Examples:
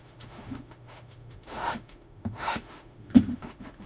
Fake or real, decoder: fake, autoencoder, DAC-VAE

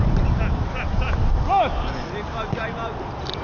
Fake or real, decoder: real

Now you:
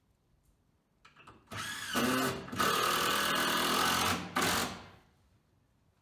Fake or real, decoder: real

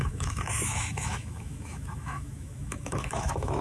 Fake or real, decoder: fake, autoencoder, DAC-VAE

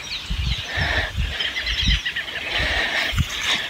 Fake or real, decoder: real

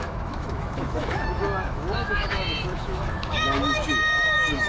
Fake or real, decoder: fake, autoencoder, DAC-VAE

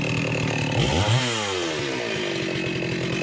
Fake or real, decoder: real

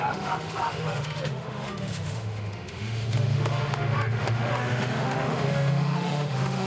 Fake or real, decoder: fake, autoencoder, DAC-VAE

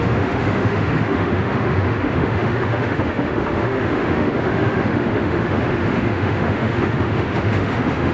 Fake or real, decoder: fake, autoencoder, DAC-VAE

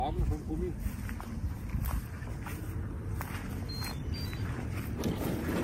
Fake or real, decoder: real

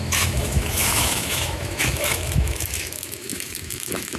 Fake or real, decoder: fake, autoencoder, DAC-VAE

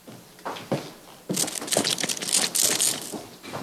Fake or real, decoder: real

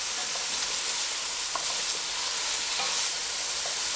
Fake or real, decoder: real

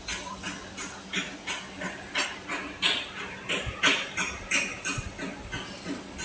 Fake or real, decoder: real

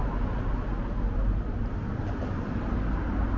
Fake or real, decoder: real